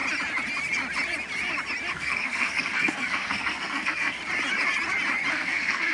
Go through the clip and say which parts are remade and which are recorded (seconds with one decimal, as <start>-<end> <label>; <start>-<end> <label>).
0.0-1.9 recorded; 1.9-4.2 remade; 4.2-5.3 recorded; 5.3-5.9 remade